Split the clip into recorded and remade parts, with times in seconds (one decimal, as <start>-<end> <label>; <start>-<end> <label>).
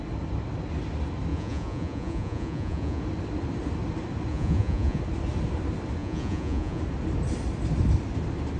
0.0-1.3 recorded; 1.3-3.0 remade; 3.0-4.3 recorded; 4.3-5.0 remade; 5.0-6.0 recorded; 6.0-6.8 remade; 6.8-8.6 recorded